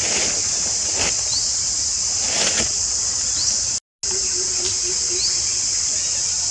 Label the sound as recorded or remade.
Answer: recorded